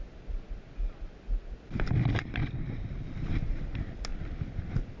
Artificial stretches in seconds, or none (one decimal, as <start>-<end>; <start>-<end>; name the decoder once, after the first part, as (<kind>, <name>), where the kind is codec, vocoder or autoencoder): 2.4-3.3 (vocoder, BigVGAN v2)